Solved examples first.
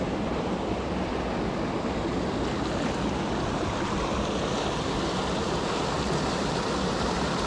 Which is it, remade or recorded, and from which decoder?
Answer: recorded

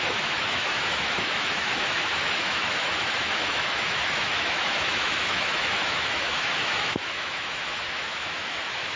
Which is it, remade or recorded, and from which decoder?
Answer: remade, autoencoder, DAC-VAE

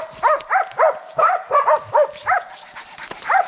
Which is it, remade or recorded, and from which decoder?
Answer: recorded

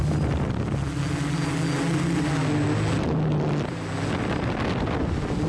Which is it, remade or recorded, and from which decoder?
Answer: recorded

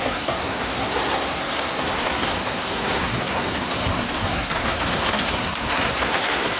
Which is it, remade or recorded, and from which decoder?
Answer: remade, codec, SNAC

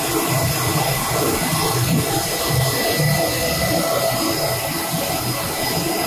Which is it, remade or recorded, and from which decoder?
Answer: recorded